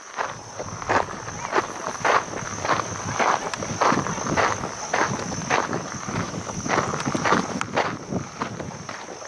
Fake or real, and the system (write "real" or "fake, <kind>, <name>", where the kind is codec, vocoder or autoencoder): real